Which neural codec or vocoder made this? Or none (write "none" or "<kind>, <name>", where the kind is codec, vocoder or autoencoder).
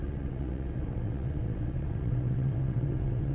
vocoder, WaveNeXt